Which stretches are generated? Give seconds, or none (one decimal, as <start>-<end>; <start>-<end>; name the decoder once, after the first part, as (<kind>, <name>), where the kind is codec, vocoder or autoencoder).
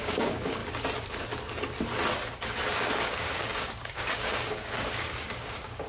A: 0.0-0.6 (codec, DAC); 2.7-5.9